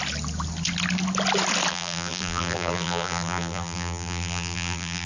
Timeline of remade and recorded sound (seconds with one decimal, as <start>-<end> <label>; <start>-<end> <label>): 0.0-1.7 recorded; 1.7-5.1 remade